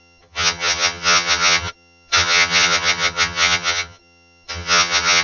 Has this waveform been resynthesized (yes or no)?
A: yes